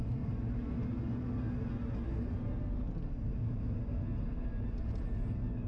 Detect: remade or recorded recorded